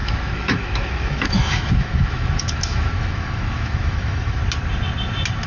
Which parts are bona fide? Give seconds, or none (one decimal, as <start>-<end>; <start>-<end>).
4.4-5.5